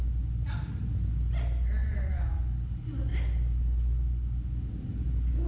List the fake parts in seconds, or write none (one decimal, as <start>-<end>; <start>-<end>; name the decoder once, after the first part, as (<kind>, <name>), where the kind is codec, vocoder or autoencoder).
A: 1.8-2.4 (vocoder, Vocos)